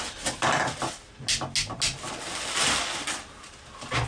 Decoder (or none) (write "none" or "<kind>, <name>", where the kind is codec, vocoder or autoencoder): none